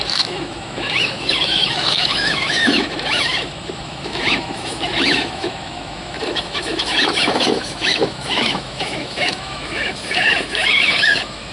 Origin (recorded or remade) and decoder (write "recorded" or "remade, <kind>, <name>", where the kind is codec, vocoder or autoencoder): remade, autoencoder, DAC-VAE